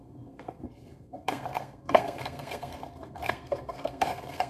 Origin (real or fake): fake